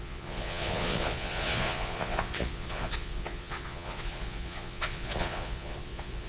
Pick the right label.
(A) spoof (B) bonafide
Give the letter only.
A